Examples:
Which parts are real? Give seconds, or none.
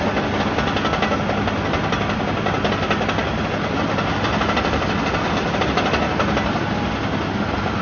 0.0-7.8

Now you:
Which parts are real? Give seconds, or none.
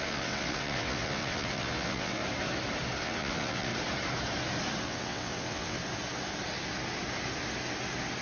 2.2-3.0; 3.7-4.8; 5.8-8.2